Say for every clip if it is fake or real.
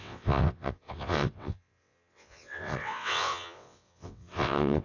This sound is fake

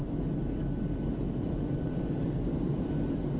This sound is real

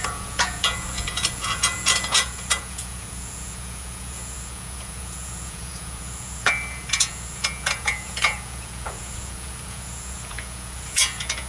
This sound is fake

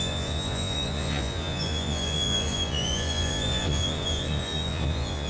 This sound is fake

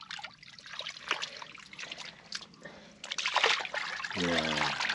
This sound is real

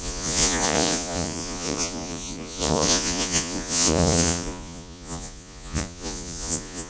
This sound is fake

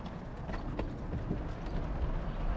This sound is real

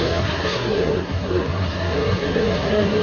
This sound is fake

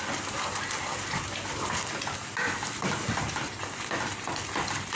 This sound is real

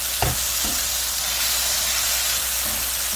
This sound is real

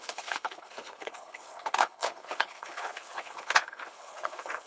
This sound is fake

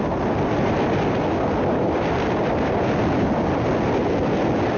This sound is real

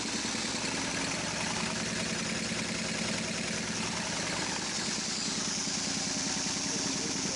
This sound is real